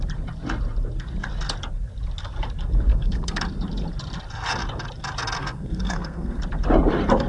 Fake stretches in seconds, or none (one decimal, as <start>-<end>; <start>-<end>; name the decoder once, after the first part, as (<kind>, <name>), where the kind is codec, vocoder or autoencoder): 2.9-3.4 (codec, SNAC); 5.4-6.4